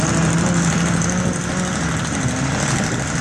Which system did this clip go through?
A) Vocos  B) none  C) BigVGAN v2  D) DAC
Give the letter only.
B